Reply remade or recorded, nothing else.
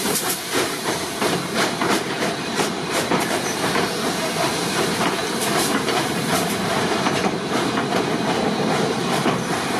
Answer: remade